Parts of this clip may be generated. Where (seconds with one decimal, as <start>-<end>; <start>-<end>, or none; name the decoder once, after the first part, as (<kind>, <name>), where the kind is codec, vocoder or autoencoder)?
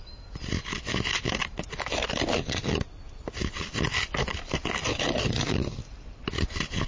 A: none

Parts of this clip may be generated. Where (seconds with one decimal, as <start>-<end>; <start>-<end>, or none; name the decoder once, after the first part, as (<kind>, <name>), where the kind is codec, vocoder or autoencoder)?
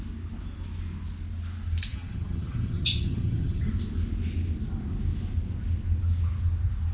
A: 1.9-3.7 (vocoder, HiFi-GAN)